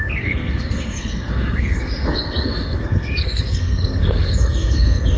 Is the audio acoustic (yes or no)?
no